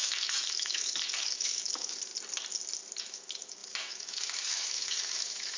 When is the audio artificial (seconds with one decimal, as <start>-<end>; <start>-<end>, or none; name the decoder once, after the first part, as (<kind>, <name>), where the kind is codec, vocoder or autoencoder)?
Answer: 0.0-2.1 (autoencoder, DAC-VAE); 3.0-5.6